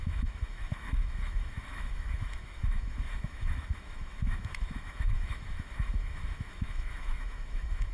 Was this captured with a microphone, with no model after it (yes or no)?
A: no